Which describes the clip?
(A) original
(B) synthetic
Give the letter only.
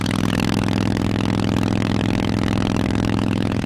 B